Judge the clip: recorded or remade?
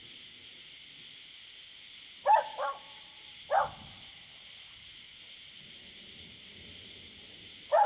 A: recorded